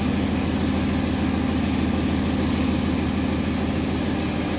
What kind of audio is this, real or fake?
real